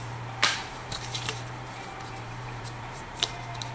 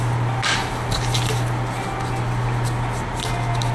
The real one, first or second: second